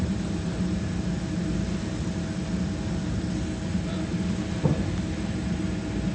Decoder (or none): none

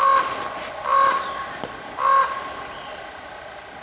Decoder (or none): none